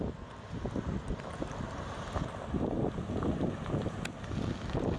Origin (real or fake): real